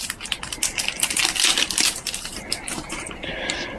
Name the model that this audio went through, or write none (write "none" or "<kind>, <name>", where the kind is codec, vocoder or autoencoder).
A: none